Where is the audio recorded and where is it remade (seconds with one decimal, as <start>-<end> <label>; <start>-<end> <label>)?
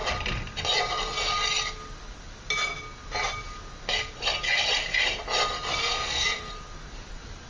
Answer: 0.0-5.8 recorded; 5.8-6.5 remade; 6.5-7.5 recorded